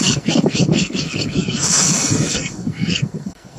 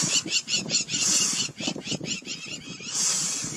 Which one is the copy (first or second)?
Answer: first